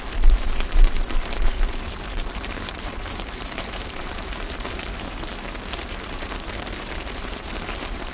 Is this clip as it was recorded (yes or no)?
no